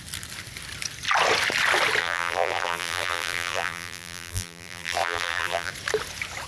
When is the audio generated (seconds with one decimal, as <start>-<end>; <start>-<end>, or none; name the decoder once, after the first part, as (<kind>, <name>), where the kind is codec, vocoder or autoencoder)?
2.0-5.7 (vocoder, BigVGAN v2)